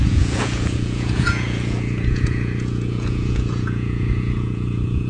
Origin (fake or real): fake